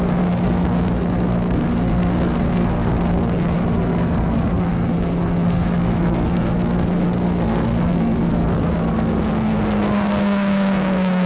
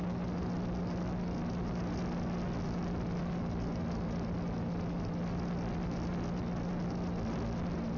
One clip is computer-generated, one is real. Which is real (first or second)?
second